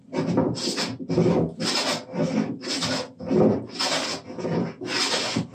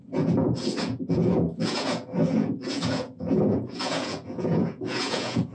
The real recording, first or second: first